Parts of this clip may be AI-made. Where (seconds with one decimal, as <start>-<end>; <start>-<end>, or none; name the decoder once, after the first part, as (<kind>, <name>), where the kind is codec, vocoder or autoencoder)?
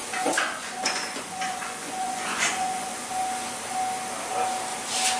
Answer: 0.0-3.1 (vocoder, Vocos)